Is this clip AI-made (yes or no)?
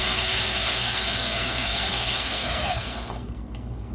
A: yes